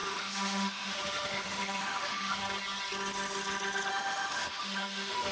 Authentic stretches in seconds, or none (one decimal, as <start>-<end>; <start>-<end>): 2.4-3.9